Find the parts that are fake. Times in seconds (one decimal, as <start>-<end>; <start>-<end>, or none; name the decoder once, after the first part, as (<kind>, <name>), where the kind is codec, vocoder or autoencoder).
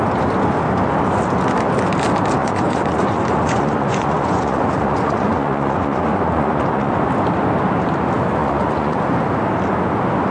2.4-6.9 (vocoder, Vocos); 8.4-9.0